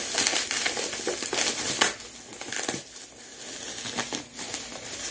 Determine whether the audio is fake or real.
real